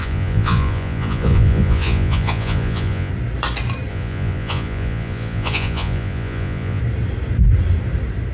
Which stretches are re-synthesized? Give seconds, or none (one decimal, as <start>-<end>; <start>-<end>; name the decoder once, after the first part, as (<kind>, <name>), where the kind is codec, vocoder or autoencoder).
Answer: 0.0-3.1 (vocoder, Vocos); 3.9-6.8